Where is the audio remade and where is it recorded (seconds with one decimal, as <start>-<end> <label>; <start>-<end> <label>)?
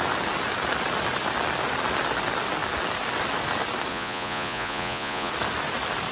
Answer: 0.0-3.9 recorded; 3.9-5.3 remade; 5.3-6.1 recorded